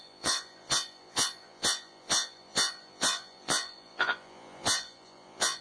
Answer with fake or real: fake